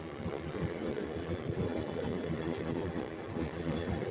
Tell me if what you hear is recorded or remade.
remade